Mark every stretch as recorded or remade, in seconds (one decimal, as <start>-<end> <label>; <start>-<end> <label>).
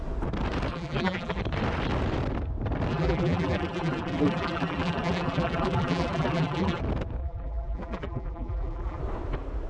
0.0-0.7 recorded; 0.7-1.4 remade; 1.4-2.9 recorded; 2.9-6.8 remade; 6.8-7.2 recorded; 7.2-9.0 remade; 9.0-9.7 recorded